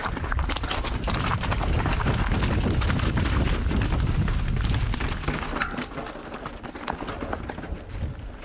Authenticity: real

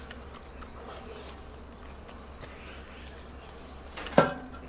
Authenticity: real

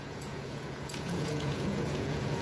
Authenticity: fake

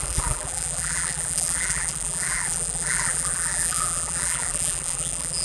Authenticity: fake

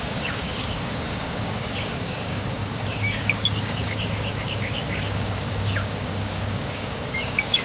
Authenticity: fake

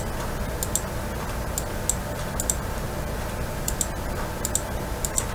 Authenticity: real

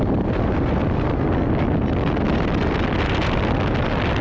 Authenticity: real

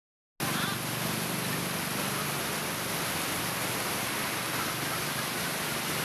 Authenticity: real